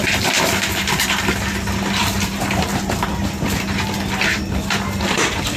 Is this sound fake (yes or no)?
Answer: no